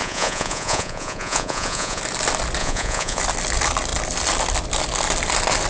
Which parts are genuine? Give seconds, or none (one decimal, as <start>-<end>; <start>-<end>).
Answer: 2.0-2.6; 3.2-5.7